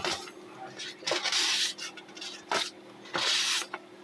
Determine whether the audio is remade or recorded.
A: recorded